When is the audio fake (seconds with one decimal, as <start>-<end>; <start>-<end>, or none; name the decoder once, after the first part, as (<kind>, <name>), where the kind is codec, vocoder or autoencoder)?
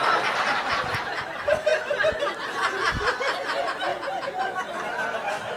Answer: 3.9-4.4 (vocoder, Vocos)